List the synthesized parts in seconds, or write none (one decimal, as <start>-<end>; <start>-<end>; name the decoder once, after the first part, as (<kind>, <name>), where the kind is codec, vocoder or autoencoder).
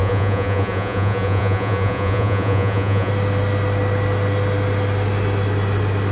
0.0-3.1 (vocoder, Vocos)